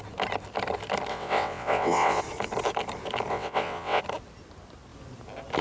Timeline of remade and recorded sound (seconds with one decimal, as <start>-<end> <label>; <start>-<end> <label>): 0.0-1.1 recorded; 1.1-2.2 remade; 2.2-3.3 recorded; 3.3-4.0 remade; 4.0-5.6 recorded

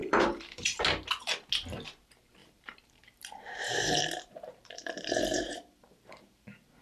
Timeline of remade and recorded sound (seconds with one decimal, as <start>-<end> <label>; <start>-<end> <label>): 0.0-0.8 remade; 0.8-2.4 recorded; 2.4-6.8 remade